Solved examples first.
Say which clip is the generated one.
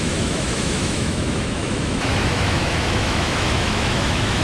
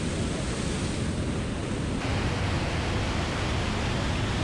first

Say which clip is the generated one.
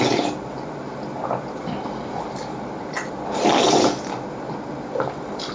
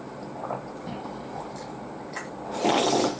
first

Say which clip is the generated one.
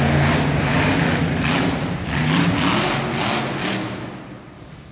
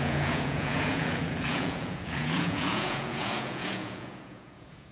second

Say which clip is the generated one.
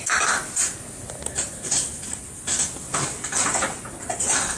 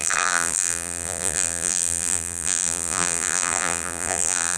second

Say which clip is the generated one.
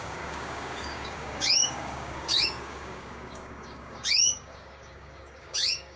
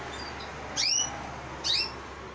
first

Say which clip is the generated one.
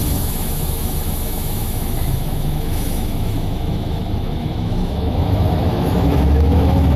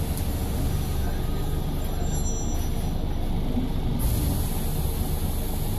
first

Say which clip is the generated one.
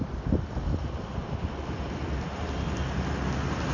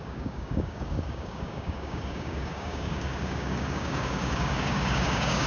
second